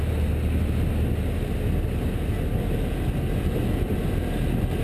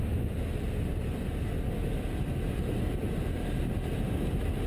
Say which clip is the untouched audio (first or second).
first